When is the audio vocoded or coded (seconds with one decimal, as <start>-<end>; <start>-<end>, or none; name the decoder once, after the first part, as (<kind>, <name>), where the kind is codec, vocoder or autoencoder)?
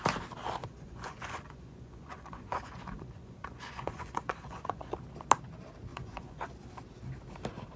0.6-4.9 (vocoder, Vocos); 5.9-6.4